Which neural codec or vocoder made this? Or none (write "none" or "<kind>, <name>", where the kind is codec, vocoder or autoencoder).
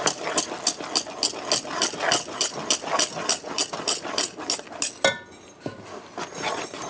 none